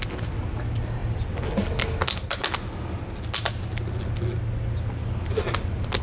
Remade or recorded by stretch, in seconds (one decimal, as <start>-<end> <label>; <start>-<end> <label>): 0.0-6.0 recorded